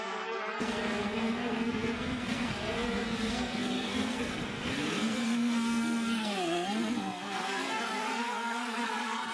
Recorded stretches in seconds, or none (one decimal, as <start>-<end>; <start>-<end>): none